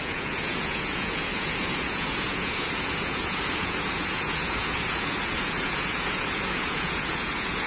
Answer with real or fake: fake